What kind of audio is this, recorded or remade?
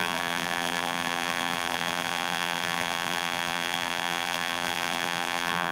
remade